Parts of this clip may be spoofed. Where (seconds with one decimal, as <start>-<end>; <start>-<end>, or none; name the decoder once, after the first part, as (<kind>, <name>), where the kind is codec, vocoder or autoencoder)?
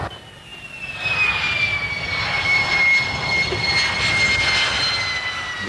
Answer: 2.1-2.8 (vocoder, BigVGAN v2)